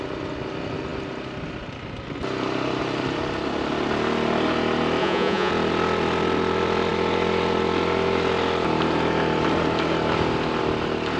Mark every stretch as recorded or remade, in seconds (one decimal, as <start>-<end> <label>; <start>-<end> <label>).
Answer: 0.0-5.0 recorded; 5.0-5.5 remade; 5.5-11.2 recorded